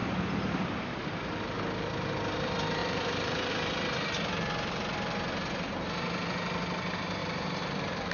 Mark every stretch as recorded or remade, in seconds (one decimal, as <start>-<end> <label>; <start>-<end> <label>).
0.0-1.1 remade; 1.1-2.8 recorded; 2.8-3.5 remade; 3.5-7.2 recorded; 7.2-8.1 remade